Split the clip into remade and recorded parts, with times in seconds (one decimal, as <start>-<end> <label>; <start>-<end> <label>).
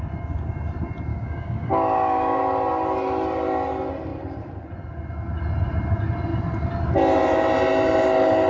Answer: 0.0-1.1 recorded; 1.1-2.4 remade; 2.4-8.5 recorded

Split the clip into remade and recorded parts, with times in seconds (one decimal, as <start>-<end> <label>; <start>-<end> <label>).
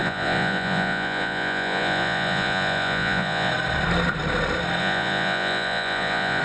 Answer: 0.0-3.5 remade; 3.5-4.8 recorded; 4.8-6.4 remade